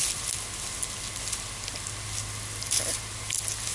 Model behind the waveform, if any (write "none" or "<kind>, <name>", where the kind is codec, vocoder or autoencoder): none